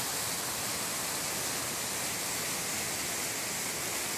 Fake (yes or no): no